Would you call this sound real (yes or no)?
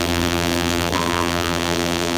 no